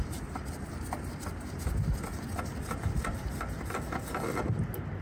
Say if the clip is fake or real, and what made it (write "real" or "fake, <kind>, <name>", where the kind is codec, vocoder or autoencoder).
real